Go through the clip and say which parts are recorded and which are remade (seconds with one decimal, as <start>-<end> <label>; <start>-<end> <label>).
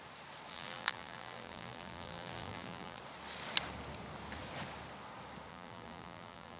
0.0-0.5 recorded; 0.5-3.0 remade; 3.0-5.5 recorded; 5.5-6.6 remade